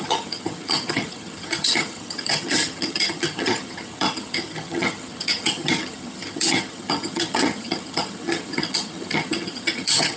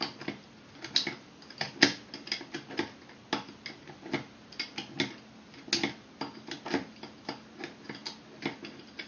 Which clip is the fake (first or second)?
first